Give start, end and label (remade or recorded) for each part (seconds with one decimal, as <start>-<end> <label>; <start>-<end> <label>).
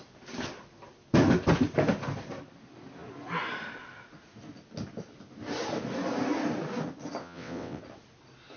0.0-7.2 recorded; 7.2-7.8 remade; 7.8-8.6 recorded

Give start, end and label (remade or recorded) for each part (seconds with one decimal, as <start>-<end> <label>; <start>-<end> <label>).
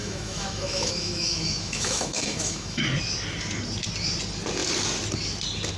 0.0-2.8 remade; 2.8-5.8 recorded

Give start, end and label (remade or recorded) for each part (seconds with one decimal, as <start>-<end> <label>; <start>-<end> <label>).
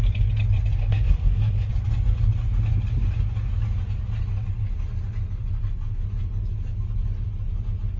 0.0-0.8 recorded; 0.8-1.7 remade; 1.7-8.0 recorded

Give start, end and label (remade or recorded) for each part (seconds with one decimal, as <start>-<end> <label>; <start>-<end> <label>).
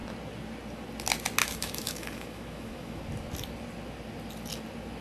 0.0-1.4 recorded; 1.4-3.0 remade; 3.0-5.0 recorded